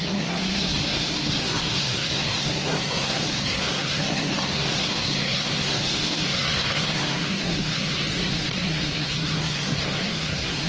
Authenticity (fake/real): fake